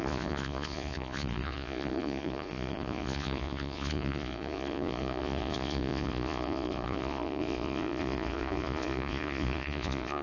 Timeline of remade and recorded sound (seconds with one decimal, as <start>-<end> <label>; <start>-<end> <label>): 0.0-10.2 remade